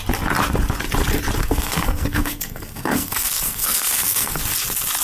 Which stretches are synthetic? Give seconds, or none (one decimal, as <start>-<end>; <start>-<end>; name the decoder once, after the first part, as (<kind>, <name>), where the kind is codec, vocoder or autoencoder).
1.4-4.4 (codec, SNAC)